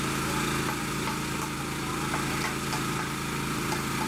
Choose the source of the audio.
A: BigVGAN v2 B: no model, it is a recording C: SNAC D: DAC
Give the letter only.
B